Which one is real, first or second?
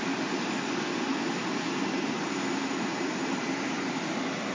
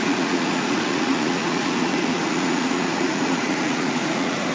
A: first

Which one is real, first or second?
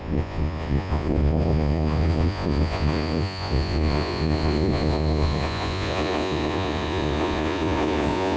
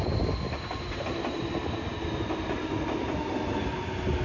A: second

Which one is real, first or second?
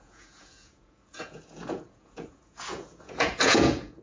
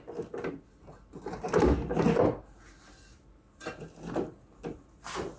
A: second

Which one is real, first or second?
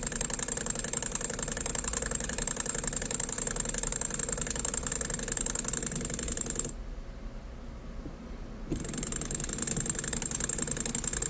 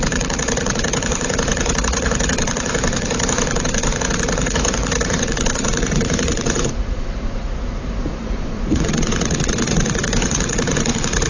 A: first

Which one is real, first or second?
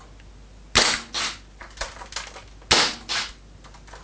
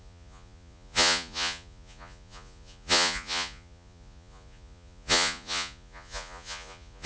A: first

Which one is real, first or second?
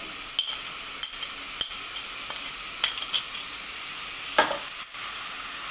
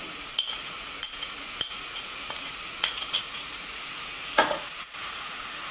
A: first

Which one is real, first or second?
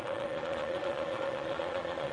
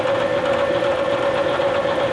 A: second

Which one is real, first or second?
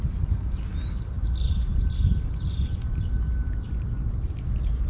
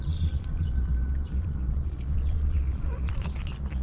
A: first